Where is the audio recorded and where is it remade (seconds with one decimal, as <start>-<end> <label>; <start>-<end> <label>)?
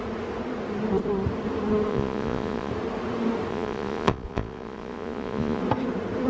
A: 0.0-1.9 recorded; 1.9-2.7 remade; 2.7-3.5 recorded; 3.5-5.6 remade; 5.6-6.3 recorded